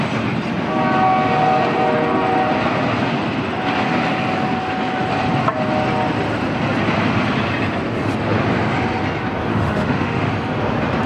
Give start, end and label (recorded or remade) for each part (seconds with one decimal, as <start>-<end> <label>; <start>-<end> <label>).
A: 0.0-9.5 recorded; 9.5-10.3 remade; 10.3-11.1 recorded